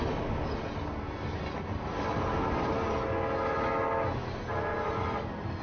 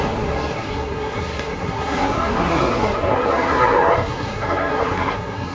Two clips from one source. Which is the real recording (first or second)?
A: first